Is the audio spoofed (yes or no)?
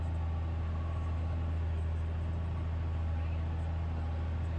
no